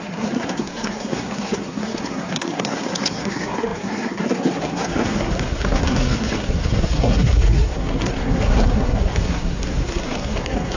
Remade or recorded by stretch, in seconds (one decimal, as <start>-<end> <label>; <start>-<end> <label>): 0.0-10.8 remade